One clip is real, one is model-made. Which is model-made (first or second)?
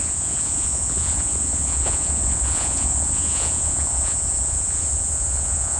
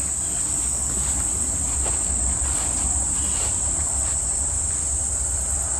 first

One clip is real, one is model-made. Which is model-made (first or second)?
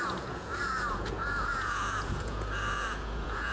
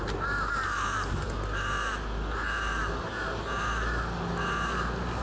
first